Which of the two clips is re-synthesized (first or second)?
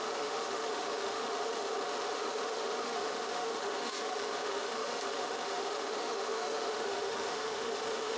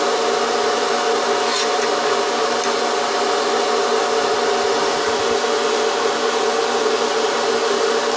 first